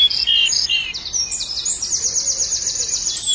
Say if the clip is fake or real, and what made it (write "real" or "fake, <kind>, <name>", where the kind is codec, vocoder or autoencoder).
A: real